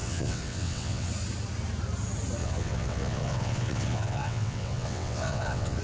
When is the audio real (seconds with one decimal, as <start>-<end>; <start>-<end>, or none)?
1.1-2.4